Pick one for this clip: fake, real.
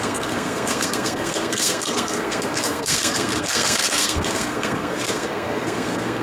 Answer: fake